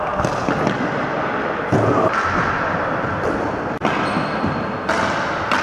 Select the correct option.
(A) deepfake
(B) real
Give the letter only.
B